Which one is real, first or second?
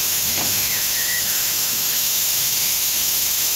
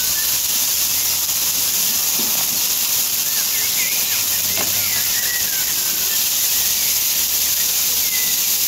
second